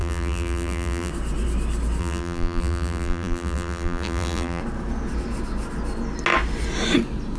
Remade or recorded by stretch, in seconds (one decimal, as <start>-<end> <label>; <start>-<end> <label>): 0.0-1.1 remade; 1.1-2.0 recorded; 2.0-4.6 remade; 4.6-7.4 recorded